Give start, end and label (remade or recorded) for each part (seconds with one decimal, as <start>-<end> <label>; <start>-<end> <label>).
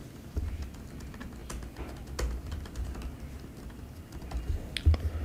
0.0-5.2 recorded